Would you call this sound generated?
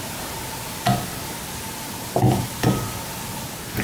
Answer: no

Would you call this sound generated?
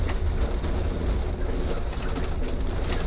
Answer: no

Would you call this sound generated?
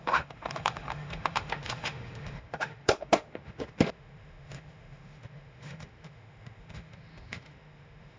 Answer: yes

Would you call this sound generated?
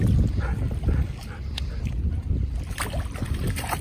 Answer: no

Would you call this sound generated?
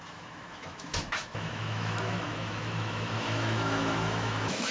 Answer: yes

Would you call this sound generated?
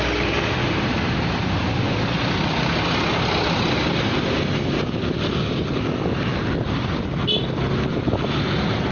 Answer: no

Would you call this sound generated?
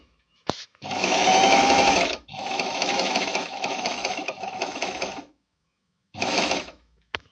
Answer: yes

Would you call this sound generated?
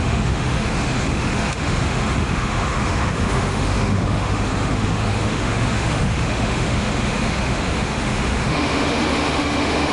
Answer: yes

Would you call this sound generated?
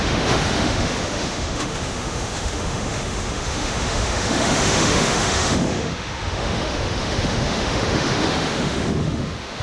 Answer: yes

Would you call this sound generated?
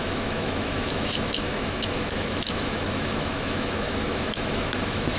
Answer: yes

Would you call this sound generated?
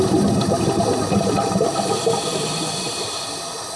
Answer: no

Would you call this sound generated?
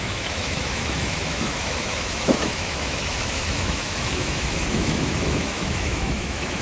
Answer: yes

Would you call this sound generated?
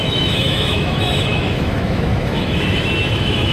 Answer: yes